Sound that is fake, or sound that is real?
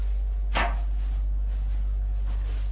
real